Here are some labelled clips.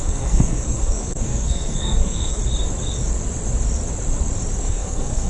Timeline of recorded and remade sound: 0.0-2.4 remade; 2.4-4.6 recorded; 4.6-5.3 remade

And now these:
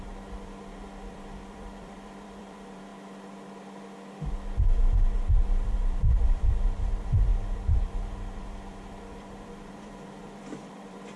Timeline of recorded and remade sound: 0.0-2.9 remade; 2.9-5.8 recorded; 5.8-11.2 remade

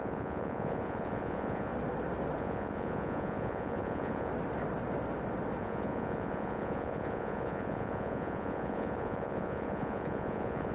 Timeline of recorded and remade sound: 0.0-1.7 remade; 1.7-2.4 recorded; 2.4-4.3 remade; 4.3-5.6 recorded; 5.6-10.7 remade